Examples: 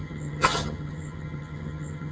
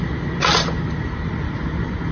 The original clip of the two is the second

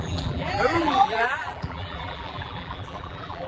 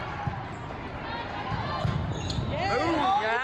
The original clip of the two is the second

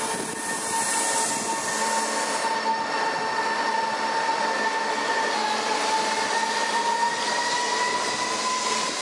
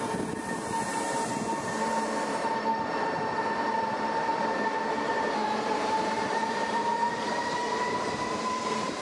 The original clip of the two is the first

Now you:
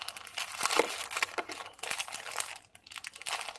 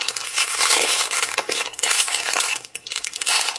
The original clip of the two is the first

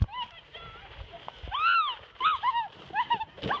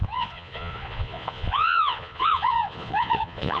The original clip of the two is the first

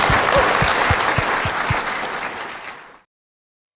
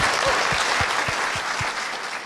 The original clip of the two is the second